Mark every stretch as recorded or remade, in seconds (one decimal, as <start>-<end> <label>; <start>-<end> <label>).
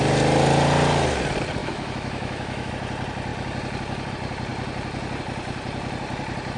0.0-1.6 recorded; 1.6-2.7 remade; 2.7-6.6 recorded